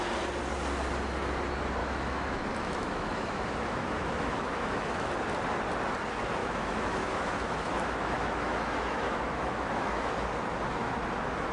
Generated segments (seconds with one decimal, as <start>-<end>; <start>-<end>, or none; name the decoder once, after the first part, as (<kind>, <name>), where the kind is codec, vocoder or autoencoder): 1.8-5.1 (autoencoder, DAC-VAE); 6.4-10.1